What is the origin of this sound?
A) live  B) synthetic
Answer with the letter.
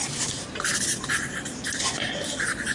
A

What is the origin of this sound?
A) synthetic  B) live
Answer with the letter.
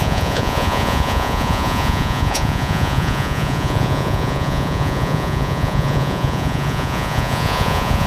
A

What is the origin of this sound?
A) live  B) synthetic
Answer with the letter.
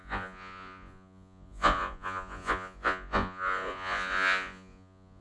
B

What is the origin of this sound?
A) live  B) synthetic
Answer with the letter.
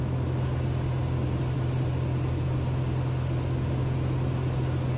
A